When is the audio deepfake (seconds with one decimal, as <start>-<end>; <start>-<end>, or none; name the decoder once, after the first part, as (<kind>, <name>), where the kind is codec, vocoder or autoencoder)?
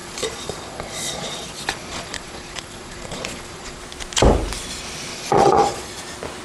0.0-3.8 (vocoder, Vocos); 5.1-6.0